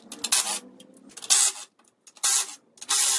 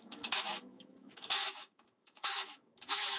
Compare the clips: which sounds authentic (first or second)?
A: first